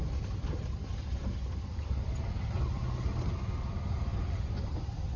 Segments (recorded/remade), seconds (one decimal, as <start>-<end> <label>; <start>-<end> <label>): 0.0-5.2 recorded